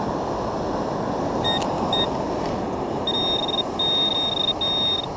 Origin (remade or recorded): recorded